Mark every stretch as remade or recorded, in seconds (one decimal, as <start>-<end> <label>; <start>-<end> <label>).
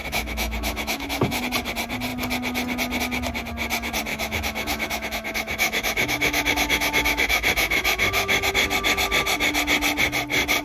0.0-1.4 remade; 1.4-4.1 recorded; 4.1-8.5 remade; 8.5-10.6 recorded